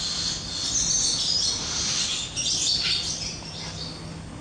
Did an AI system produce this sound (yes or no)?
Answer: no